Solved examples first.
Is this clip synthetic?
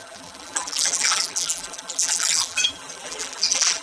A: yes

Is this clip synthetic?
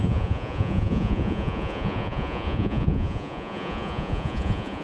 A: yes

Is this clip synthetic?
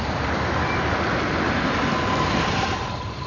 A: no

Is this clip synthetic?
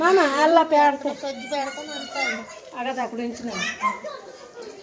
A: yes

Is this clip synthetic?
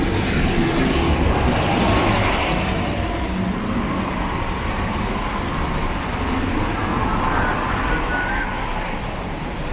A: no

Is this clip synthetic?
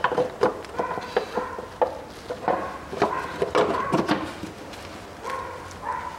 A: no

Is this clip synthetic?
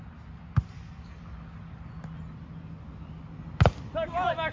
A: no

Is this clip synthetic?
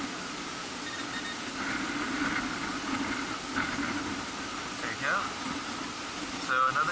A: no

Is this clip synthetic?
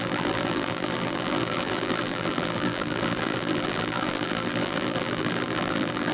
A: yes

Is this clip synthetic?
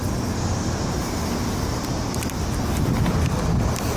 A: no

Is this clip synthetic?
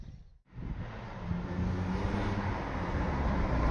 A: no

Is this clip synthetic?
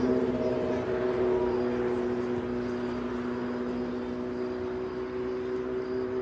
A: no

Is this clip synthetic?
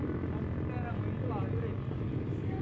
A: no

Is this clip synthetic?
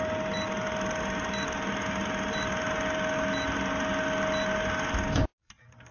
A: no